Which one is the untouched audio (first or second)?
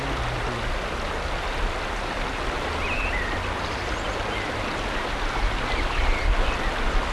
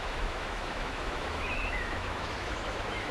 first